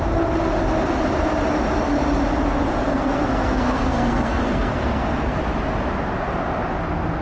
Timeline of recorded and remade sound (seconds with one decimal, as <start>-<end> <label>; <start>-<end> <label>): 0.0-2.9 recorded; 2.9-5.4 remade; 5.4-7.2 recorded